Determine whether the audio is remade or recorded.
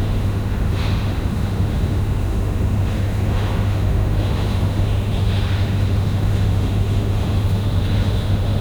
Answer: remade